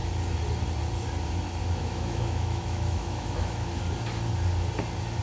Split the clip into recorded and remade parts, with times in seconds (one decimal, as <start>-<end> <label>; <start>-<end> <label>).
0.0-1.6 recorded; 1.6-3.8 remade; 3.8-5.2 recorded

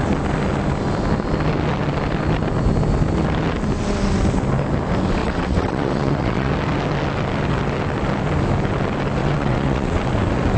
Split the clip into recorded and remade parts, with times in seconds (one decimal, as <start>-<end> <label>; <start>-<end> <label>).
0.0-5.2 recorded; 5.2-6.5 remade; 6.5-9.2 recorded; 9.2-10.1 remade; 10.1-10.6 recorded

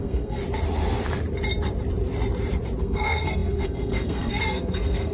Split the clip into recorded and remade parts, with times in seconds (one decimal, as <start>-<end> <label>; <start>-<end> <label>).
0.0-0.4 remade; 0.4-2.8 recorded; 2.8-5.1 remade

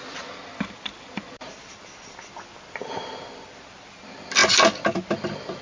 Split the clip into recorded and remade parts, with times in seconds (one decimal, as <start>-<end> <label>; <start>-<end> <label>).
0.0-5.6 recorded

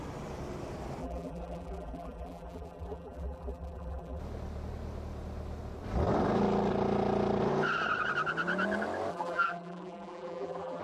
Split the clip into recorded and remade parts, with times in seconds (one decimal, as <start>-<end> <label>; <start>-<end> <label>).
0.0-1.0 recorded; 1.0-4.2 remade; 4.2-9.1 recorded; 9.1-10.8 remade

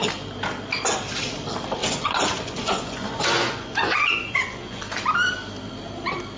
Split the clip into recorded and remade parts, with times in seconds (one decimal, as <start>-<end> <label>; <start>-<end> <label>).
0.0-1.8 recorded; 1.8-4.8 remade; 4.8-6.4 recorded

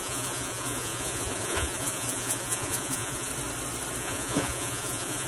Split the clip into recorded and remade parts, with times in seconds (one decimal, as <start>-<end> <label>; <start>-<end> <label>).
0.0-3.3 remade; 3.3-4.0 recorded; 4.0-5.3 remade